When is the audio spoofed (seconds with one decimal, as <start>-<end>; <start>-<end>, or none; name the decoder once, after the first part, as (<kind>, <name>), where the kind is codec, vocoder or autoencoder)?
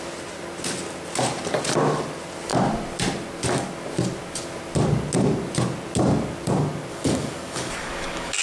6.9-8.4 (codec, DAC)